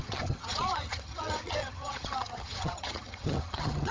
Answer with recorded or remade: remade